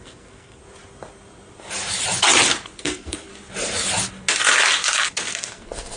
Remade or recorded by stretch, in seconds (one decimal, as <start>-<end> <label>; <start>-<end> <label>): 0.0-0.6 remade; 0.6-2.8 recorded; 2.8-3.3 remade; 3.3-5.1 recorded; 5.1-6.0 remade